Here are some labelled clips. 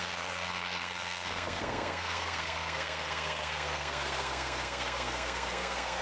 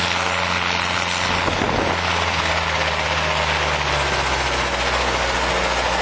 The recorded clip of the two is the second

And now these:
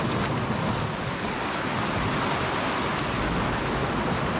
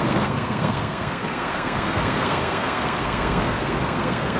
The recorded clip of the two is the first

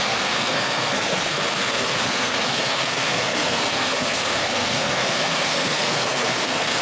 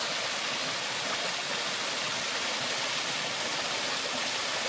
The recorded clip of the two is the second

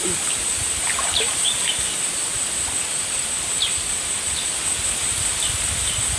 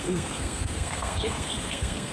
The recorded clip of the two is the first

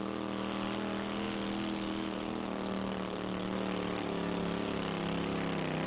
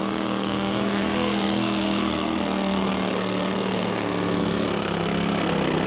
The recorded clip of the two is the first